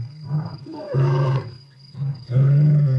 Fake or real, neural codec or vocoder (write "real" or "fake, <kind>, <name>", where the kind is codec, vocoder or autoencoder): fake, codec, SNAC